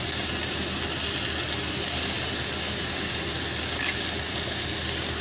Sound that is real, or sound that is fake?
real